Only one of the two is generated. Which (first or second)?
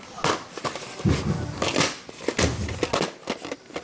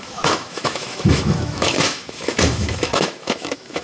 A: second